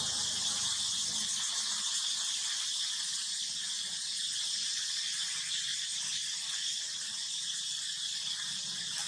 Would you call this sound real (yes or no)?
yes